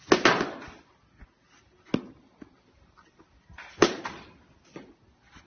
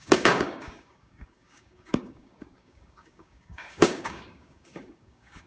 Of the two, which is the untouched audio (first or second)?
first